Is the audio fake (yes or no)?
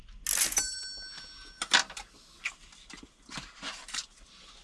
no